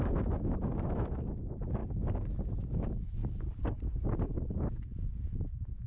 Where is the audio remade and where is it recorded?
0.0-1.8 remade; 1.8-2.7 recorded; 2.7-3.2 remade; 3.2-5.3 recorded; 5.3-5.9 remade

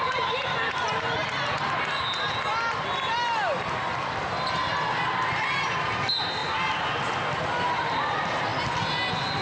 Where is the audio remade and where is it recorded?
0.0-1.2 remade; 1.2-3.9 recorded; 3.9-6.4 remade; 6.4-7.4 recorded; 7.4-8.5 remade; 8.5-9.4 recorded

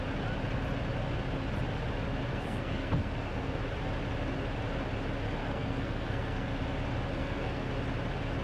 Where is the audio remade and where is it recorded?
0.0-2.3 recorded; 2.3-3.6 remade; 3.6-5.4 recorded; 5.4-6.5 remade; 6.5-7.2 recorded; 7.2-7.7 remade; 7.7-8.4 recorded

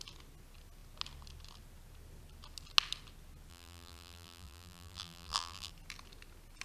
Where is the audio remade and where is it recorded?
0.0-3.5 recorded; 3.5-5.7 remade; 5.7-6.6 recorded

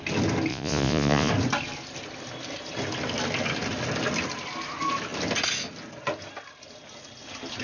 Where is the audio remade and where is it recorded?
0.0-0.5 recorded; 0.5-1.3 remade; 1.3-7.6 recorded

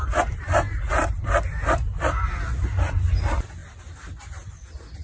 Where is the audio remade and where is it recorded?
0.0-5.0 recorded

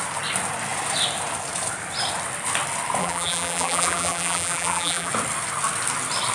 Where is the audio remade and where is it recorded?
0.0-3.0 recorded; 3.0-5.1 remade; 5.1-6.3 recorded

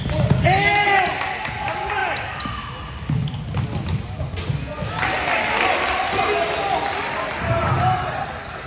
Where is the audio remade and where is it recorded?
0.0-4.7 recorded; 4.7-5.2 remade; 5.2-8.7 recorded